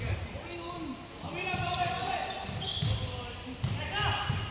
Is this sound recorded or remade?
recorded